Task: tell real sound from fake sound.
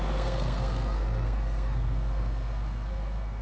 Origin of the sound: fake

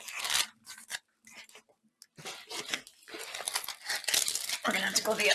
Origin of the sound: real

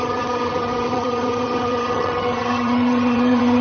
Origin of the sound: fake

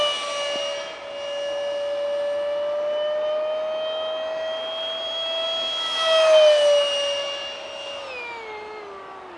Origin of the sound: real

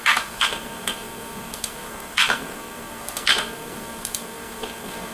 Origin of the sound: fake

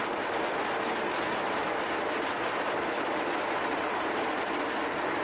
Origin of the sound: real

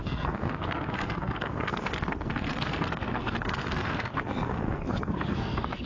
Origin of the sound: fake